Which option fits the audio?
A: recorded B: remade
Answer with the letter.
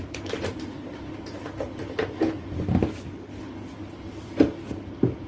A